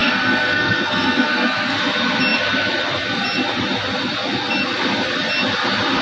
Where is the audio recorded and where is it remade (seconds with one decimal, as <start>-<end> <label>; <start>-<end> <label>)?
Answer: 0.0-1.8 remade; 1.8-6.0 recorded